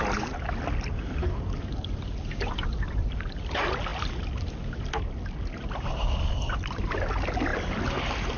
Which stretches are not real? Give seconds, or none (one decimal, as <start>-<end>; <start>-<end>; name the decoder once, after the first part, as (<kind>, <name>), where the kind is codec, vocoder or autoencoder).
none